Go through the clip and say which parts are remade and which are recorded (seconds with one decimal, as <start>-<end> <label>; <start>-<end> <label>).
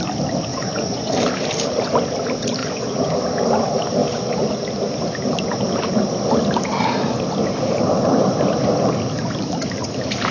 0.0-0.5 recorded; 0.5-1.1 remade; 1.1-2.6 recorded; 2.6-3.2 remade; 3.2-10.3 recorded